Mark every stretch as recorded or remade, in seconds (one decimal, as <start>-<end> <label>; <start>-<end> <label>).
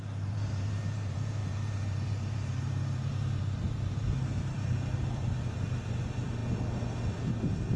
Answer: 0.0-6.4 remade; 6.4-7.3 recorded; 7.3-7.8 remade